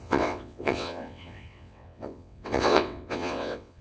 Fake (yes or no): yes